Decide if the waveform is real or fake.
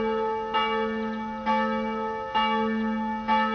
real